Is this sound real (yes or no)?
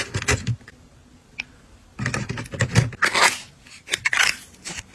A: yes